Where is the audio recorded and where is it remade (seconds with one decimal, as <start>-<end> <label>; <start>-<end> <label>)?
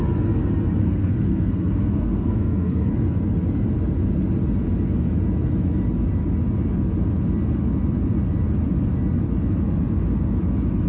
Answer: 0.0-0.8 recorded; 0.8-2.9 remade; 2.9-10.9 recorded